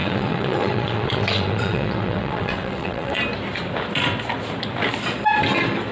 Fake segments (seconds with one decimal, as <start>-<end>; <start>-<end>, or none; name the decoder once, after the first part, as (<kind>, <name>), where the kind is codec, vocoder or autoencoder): 0.0-3.2 (vocoder, WaveNeXt)